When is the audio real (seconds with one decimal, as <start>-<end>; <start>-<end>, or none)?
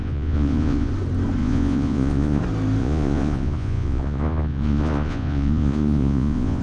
0.9-1.4; 2.4-2.8